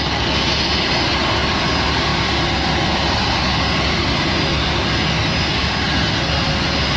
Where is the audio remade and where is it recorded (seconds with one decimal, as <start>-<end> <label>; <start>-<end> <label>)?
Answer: 0.0-7.0 recorded

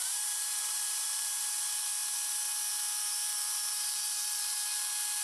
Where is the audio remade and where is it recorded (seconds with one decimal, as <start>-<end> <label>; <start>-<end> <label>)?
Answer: 0.0-1.6 remade; 1.6-5.2 recorded

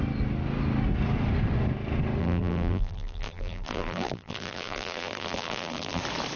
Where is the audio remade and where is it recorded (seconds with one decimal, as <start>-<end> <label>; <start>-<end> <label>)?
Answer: 0.0-2.2 recorded; 2.2-6.0 remade; 6.0-6.4 recorded

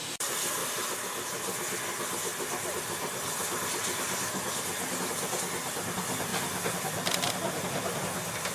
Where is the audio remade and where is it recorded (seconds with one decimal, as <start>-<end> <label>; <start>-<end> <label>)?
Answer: 0.0-8.5 recorded

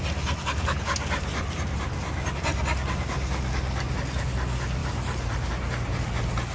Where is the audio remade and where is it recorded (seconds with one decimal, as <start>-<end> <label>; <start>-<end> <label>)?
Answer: 0.0-4.8 recorded; 4.8-5.5 remade; 5.5-6.5 recorded

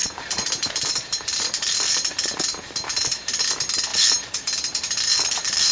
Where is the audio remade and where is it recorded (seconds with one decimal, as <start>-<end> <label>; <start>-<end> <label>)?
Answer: 0.0-3.4 remade; 3.4-3.9 recorded; 3.9-5.7 remade

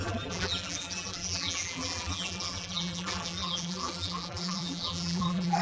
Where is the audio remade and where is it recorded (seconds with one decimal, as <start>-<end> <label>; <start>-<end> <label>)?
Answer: 0.0-5.6 remade